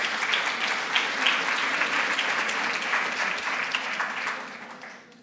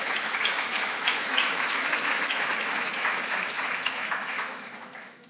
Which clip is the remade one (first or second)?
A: second